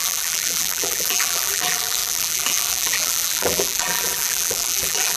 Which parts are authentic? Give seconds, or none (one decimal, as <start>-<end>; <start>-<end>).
none